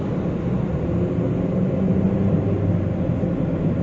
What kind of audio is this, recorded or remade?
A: recorded